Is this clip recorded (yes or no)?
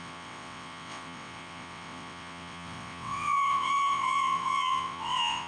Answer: no